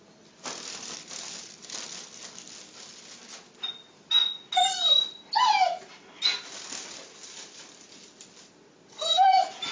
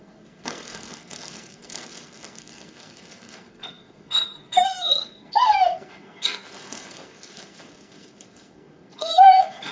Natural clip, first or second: first